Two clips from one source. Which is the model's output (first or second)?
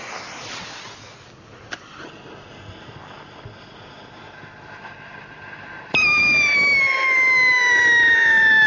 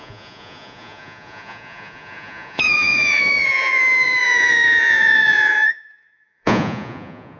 second